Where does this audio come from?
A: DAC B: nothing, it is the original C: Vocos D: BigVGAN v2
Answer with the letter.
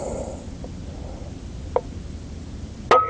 B